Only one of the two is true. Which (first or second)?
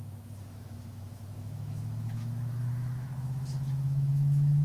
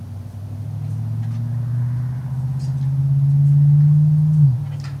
second